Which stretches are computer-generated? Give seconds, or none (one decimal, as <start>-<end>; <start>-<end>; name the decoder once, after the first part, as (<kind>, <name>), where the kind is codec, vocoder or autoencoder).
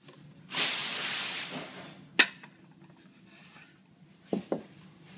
0.0-0.8 (vocoder, BigVGAN v2); 3.9-5.2